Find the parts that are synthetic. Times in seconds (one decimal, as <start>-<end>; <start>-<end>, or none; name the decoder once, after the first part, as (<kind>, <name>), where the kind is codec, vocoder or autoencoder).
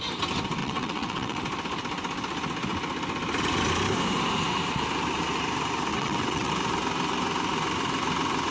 0.6-1.4 (vocoder, WaveNeXt); 5.9-6.5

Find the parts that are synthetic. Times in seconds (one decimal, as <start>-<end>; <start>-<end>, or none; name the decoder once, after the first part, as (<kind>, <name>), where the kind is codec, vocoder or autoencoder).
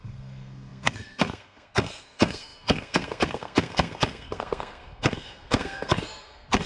0.0-6.7 (codec, SNAC)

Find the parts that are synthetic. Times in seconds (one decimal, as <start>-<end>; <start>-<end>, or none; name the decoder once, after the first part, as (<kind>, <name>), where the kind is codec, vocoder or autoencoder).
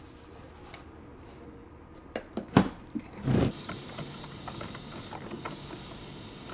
1.1-5.0 (vocoder, BigVGAN v2)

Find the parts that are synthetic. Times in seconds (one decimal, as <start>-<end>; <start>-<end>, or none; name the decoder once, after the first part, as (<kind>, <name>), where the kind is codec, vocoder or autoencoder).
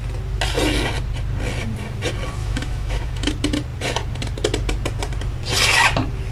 2.4-3.3 (autoencoder, DAC-VAE)